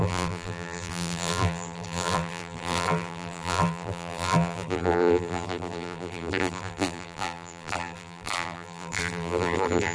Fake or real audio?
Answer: fake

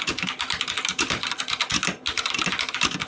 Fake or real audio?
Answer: real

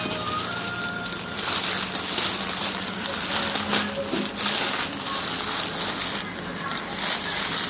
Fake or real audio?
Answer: real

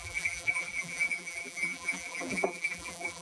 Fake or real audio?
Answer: fake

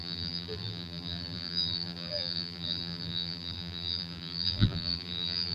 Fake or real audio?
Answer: fake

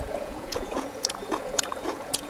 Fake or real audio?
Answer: fake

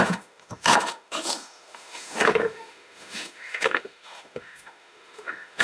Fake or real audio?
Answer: fake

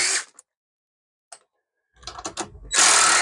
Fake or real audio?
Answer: real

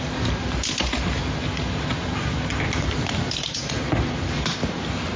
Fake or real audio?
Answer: real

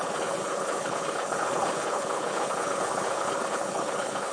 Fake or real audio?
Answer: fake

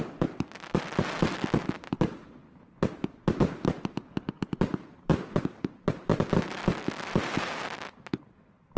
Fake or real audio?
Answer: real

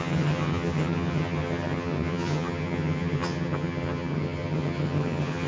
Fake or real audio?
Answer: fake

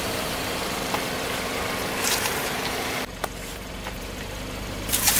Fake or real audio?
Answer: fake